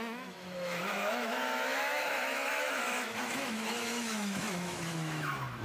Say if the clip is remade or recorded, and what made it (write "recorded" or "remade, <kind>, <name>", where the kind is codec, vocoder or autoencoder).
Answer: remade, autoencoder, DAC-VAE